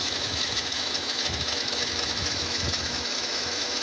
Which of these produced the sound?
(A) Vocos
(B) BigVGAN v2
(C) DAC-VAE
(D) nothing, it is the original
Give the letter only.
C